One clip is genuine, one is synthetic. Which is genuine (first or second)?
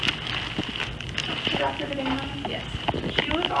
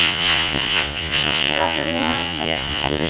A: first